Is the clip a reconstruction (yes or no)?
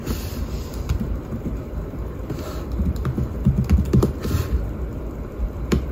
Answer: yes